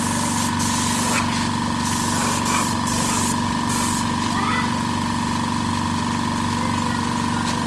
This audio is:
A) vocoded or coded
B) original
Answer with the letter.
B